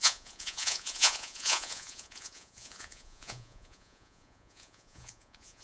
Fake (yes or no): yes